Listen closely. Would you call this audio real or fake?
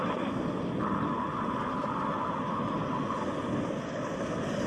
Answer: real